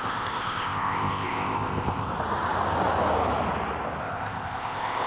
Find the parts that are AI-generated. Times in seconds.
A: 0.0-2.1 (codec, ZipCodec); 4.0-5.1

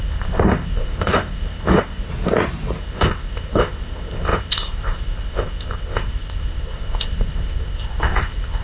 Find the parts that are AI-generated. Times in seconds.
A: 0.0-2.1 (codec, ZipCodec); 2.8-8.6

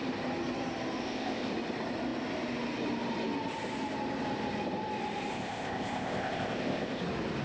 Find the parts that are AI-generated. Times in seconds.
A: 1.0-1.5 (codec, ZipCodec); 5.3-7.0

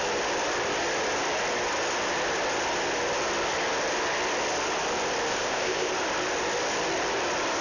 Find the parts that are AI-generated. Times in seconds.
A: 5.3-5.9 (codec, ZipCodec)

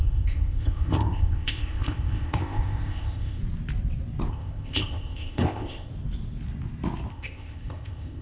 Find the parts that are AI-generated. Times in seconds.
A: 0.0-3.4 (codec, ZipCodec); 4.3-5.9; 7.1-8.2